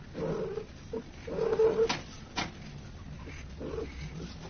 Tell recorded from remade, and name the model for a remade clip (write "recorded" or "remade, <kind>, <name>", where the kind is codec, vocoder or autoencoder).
recorded